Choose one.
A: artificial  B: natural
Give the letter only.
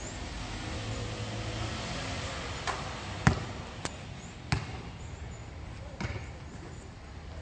B